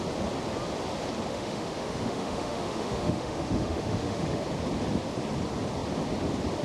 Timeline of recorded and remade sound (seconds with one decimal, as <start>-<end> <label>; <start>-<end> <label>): 0.0-1.3 recorded; 1.3-4.4 remade; 4.4-6.6 recorded